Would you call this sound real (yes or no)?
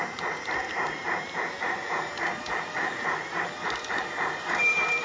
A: no